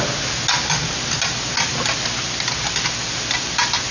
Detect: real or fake real